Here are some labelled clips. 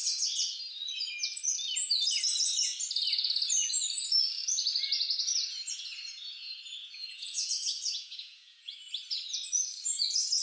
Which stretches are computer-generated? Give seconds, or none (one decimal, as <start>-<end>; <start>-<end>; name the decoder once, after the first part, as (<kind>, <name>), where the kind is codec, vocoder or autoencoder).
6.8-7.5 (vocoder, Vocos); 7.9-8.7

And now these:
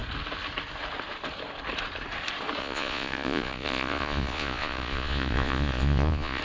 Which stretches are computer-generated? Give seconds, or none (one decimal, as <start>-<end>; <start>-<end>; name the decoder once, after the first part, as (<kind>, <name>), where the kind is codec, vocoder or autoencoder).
2.6-6.4 (vocoder, Vocos)

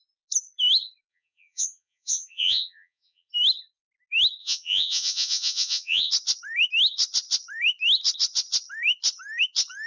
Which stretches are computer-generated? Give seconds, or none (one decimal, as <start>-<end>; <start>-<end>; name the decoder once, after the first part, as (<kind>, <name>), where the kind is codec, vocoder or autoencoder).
1.1-3.3 (vocoder, Vocos); 4.4-6.1

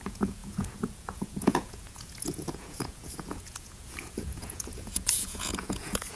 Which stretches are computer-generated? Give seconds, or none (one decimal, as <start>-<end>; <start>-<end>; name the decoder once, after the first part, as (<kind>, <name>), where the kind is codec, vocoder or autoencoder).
0.0-6.2 (vocoder, Vocos)

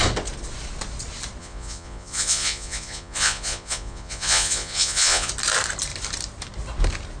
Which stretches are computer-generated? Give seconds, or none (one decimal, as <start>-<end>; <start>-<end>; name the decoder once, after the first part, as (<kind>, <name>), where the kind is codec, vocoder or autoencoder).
1.4-5.3 (vocoder, Vocos)

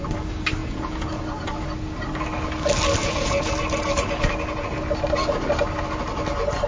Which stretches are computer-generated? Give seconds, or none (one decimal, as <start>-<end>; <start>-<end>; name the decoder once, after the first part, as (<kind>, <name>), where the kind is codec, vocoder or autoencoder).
0.6-1.2 (vocoder, Vocos); 3.0-3.5